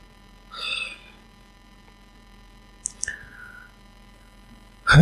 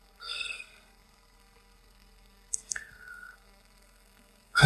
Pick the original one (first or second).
first